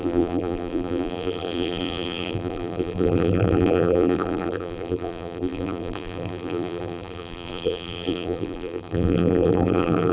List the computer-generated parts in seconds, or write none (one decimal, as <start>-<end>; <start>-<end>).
0.0-10.1